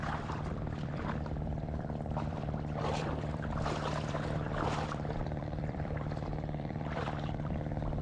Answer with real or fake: fake